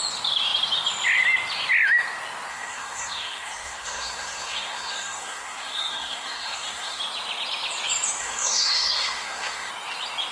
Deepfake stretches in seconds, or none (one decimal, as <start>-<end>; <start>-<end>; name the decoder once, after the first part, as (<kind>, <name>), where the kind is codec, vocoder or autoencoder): 2.5-7.0 (codec, SNAC); 8.2-9.7

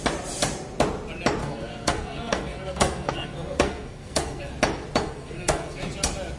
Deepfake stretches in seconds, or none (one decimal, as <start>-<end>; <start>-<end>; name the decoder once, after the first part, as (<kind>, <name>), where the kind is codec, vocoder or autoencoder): 1.4-4.5 (codec, SNAC); 5.0-5.8